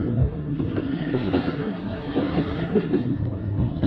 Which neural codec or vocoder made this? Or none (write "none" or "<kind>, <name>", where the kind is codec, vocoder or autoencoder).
codec, SNAC